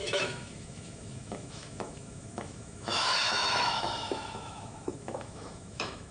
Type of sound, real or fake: fake